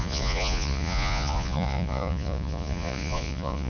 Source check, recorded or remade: remade